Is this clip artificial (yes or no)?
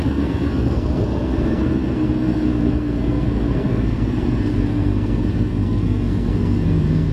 yes